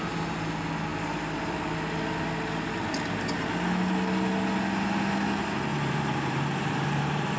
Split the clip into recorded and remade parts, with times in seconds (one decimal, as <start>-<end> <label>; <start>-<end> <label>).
0.0-5.7 recorded; 5.7-7.4 remade